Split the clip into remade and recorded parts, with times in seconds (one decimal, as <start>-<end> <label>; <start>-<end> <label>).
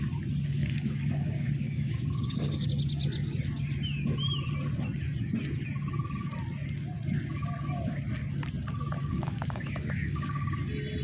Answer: 0.0-0.6 recorded; 0.6-2.7 remade; 2.7-9.0 recorded; 9.0-10.5 remade; 10.5-11.0 recorded